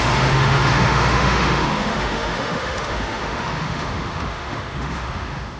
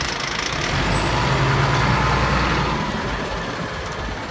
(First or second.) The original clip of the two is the second